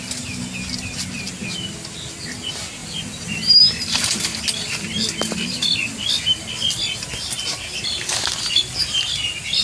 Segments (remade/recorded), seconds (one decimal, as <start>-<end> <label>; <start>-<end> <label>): 0.0-9.6 recorded